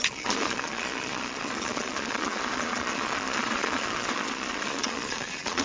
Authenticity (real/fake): fake